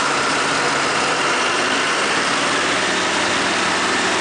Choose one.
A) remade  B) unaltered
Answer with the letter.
A